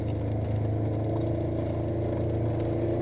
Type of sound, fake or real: real